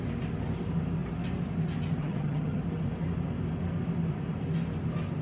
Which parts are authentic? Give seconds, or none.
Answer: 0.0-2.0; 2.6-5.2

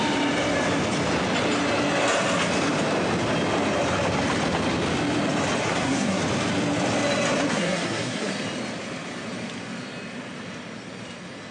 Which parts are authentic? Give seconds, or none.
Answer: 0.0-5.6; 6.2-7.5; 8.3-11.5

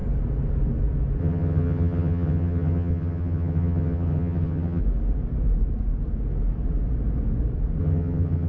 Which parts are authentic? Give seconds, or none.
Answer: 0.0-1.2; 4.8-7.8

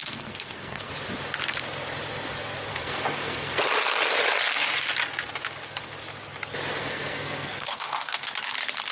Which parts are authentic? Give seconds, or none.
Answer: 0.9-2.7; 3.6-6.8; 8.3-8.9

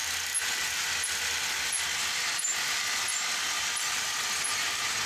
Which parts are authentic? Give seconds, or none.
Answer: 0.0-5.1

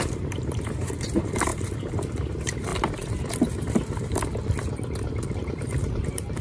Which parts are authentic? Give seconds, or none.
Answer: 2.7-5.3